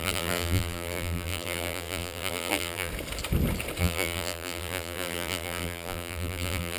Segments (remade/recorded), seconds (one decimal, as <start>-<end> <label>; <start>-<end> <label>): 0.0-2.9 remade; 2.9-3.8 recorded; 3.8-6.8 remade

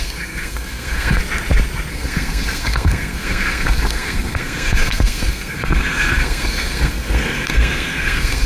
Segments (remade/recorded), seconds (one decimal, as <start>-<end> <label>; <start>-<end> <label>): 0.0-1.2 remade; 1.2-1.9 recorded; 1.9-8.5 remade

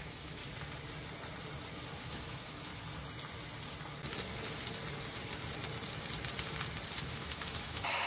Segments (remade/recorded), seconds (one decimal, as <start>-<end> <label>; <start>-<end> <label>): 0.0-0.4 remade; 0.4-2.0 recorded; 2.0-2.7 remade; 2.7-7.0 recorded; 7.0-8.1 remade

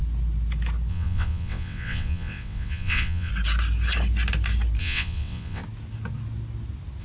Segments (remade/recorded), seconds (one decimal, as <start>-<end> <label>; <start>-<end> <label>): 0.0-0.9 recorded; 0.9-3.3 remade; 3.3-4.8 recorded; 4.8-5.6 remade; 5.6-7.0 recorded

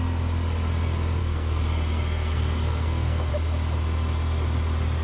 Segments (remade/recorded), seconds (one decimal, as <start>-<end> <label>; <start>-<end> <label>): 0.0-1.2 recorded; 1.2-3.3 remade; 3.3-5.0 recorded

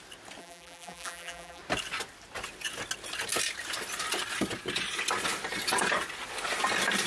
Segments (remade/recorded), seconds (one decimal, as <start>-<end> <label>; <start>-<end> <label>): 0.0-0.4 recorded; 0.4-1.6 remade; 1.6-7.1 recorded